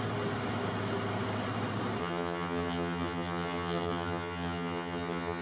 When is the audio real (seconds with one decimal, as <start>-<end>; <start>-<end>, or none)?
0.0-2.0